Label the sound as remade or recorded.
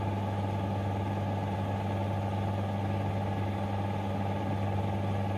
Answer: recorded